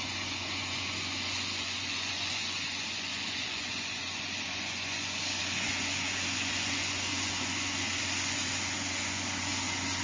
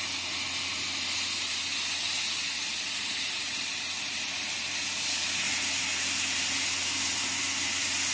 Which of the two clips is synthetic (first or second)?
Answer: first